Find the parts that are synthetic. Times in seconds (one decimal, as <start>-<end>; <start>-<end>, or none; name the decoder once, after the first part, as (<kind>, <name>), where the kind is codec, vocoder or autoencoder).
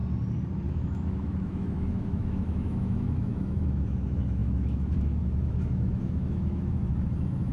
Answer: 0.7-7.5 (autoencoder, DAC-VAE)